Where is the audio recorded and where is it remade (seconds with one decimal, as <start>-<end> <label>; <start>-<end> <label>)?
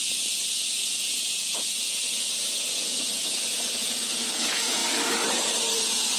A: 0.0-4.8 remade; 4.8-5.8 recorded; 5.8-6.2 remade